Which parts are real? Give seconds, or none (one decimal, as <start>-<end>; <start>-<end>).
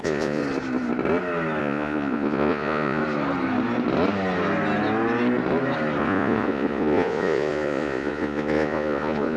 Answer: 0.4-1.6; 3.0-6.0